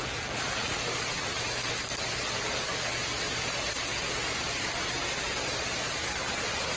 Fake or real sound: real